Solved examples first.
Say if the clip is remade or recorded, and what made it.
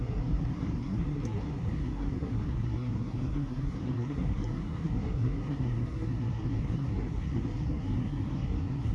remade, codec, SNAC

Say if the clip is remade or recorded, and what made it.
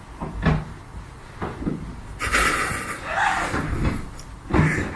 recorded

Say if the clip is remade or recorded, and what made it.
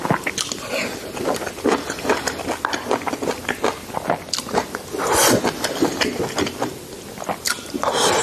recorded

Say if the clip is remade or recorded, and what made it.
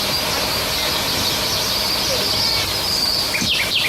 recorded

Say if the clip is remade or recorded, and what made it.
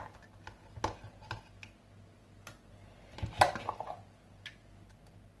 recorded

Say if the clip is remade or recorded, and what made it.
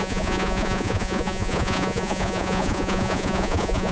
remade, vocoder, Vocos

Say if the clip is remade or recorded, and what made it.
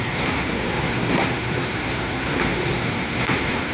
remade, codec, SNAC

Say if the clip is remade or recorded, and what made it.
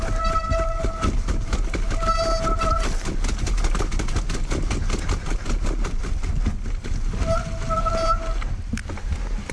recorded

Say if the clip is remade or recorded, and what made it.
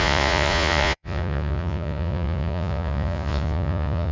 remade, vocoder, Vocos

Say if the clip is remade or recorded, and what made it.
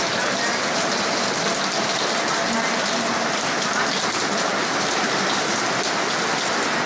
recorded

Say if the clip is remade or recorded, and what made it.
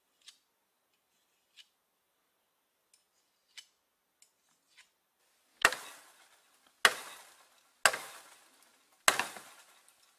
recorded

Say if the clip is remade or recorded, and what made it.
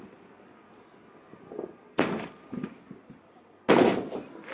recorded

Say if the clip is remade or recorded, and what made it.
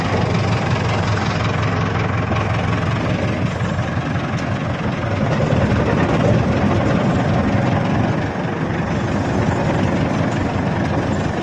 recorded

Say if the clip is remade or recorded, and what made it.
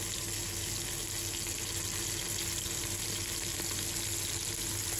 recorded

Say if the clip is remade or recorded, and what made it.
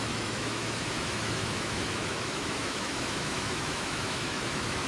remade, autoencoder, DAC-VAE